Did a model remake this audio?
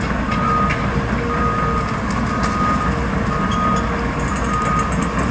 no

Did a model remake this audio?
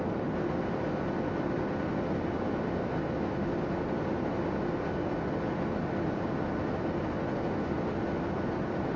no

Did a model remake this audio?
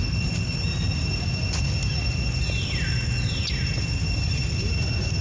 no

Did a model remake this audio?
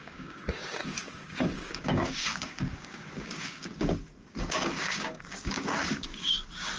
yes